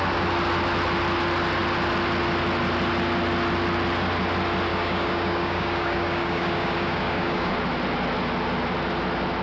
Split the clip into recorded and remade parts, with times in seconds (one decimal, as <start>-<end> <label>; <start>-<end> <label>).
0.0-4.7 recorded; 4.7-7.5 remade; 7.5-9.4 recorded

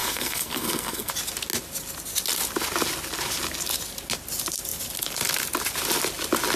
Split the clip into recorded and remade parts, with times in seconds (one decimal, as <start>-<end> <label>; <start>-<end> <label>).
0.0-1.1 remade; 1.1-6.6 recorded